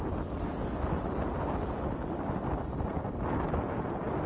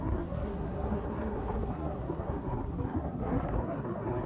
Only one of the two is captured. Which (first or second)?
first